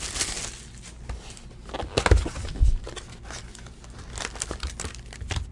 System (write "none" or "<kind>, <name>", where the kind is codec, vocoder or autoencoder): none